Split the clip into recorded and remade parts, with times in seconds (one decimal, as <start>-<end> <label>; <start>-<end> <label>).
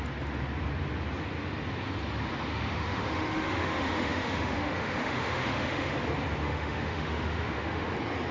0.0-2.5 recorded; 2.5-5.9 remade; 5.9-6.4 recorded; 6.4-7.9 remade; 7.9-8.3 recorded